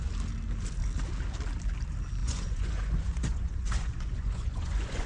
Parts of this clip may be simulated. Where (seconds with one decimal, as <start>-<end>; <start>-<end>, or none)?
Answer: 2.2-5.1